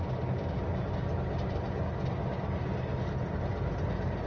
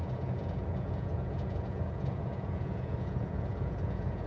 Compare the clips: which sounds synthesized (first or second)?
second